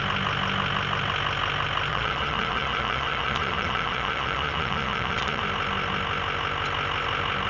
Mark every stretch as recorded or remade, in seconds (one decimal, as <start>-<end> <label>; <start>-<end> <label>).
0.0-1.9 recorded; 1.9-5.4 remade; 5.4-7.5 recorded